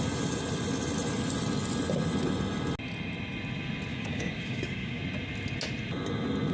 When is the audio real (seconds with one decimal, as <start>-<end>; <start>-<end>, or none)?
0.0-3.9; 5.0-6.5